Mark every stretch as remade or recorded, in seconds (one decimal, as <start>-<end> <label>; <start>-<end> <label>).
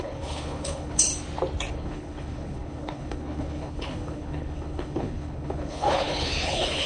0.0-1.1 remade; 1.1-1.7 recorded; 1.7-6.9 remade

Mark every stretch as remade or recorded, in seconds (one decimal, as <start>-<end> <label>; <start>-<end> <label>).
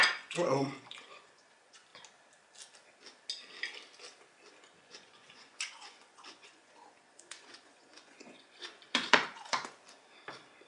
0.0-1.9 remade; 1.9-4.6 recorded; 4.6-9.8 remade; 9.8-10.7 recorded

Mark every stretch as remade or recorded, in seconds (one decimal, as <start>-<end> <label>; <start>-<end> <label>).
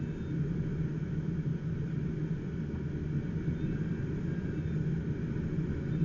0.0-6.0 recorded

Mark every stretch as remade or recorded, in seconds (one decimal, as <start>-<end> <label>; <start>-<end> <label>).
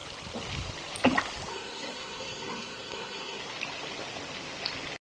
0.0-1.5 recorded; 1.5-3.4 remade; 3.4-5.1 recorded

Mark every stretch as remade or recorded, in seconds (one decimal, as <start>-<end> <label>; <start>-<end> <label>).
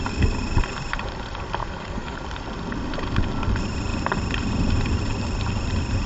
0.0-1.6 recorded; 1.6-2.2 remade; 2.2-6.1 recorded